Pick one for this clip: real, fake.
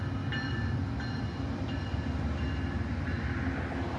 real